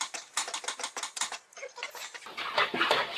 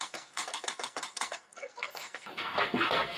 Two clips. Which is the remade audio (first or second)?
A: second